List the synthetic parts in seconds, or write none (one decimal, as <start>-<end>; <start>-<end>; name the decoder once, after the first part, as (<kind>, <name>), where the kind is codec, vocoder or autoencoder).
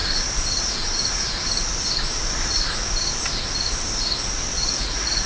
4.5-5.3 (vocoder, Vocos)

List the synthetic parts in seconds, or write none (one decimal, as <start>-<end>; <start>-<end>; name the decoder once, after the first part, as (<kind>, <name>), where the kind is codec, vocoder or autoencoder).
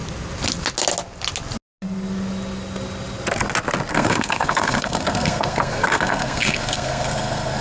3.9-7.6 (codec, SNAC)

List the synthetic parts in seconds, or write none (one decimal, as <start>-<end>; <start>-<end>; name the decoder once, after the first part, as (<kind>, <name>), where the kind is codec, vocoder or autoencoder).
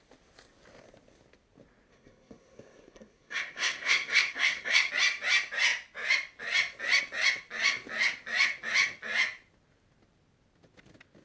1.9-4.9 (codec, SNAC)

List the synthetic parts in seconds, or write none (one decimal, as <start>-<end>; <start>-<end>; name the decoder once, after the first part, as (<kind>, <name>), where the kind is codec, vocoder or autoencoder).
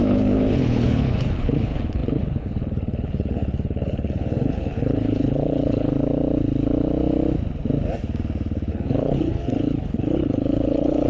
0.0-5.9 (codec, HILCodec); 8.7-11.1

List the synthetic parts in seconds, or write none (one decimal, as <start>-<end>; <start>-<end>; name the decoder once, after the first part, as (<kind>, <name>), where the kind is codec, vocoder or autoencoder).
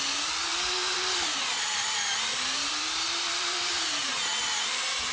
0.0-4.3 (vocoder, BigVGAN v2)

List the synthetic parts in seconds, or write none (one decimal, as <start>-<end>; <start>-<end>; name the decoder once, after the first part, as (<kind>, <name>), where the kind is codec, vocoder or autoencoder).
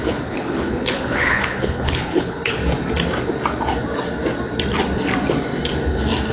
0.0-2.6 (codec, HILCodec)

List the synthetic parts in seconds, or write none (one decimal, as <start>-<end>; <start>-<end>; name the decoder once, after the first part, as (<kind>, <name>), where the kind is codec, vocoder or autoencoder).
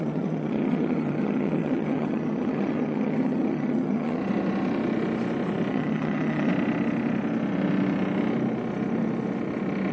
0.0-4.2 (vocoder, HiFi-GAN); 5.7-6.5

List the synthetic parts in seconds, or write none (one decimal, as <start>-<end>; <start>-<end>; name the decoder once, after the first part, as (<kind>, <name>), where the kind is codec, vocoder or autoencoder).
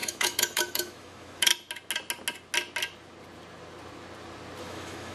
0.0-1.5 (autoencoder, DAC-VAE); 4.6-5.1